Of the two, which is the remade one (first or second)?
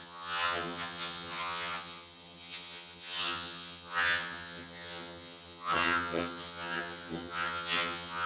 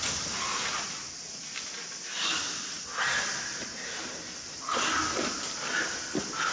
first